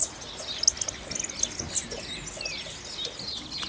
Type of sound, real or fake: real